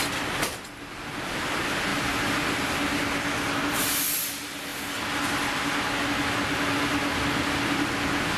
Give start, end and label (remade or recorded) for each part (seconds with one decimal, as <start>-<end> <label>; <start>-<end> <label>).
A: 0.0-8.4 recorded